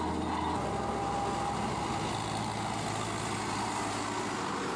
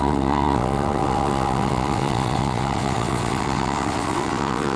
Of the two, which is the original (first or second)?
first